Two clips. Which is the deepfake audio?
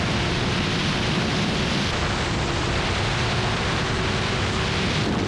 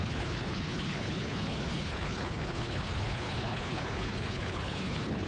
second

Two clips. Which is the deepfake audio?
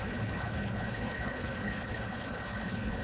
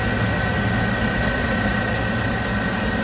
first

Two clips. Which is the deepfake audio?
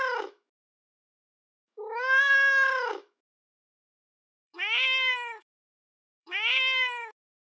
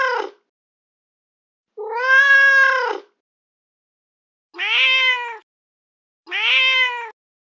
first